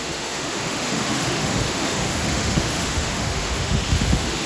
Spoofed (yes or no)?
yes